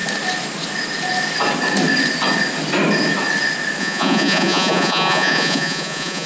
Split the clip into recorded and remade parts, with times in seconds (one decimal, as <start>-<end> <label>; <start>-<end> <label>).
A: 0.0-3.8 recorded; 3.8-6.3 remade